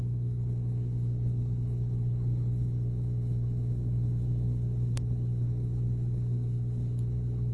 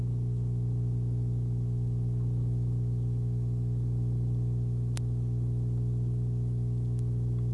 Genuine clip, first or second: second